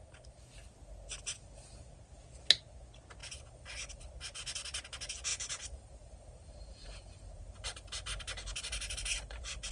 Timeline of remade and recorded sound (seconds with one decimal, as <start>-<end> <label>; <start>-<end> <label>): 0.0-3.2 recorded; 3.2-4.1 remade; 4.1-5.3 recorded; 5.3-9.7 remade